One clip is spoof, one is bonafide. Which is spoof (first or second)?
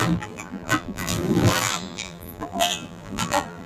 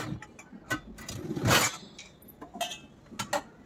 first